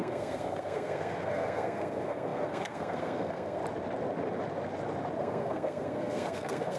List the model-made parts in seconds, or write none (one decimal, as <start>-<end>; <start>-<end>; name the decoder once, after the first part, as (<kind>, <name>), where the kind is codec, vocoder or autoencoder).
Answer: 0.0-3.6 (codec, SNAC); 5.2-6.8